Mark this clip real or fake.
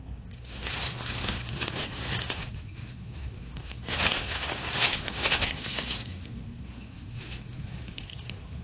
fake